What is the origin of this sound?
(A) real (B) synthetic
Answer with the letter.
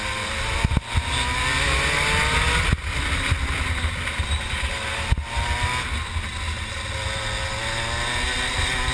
A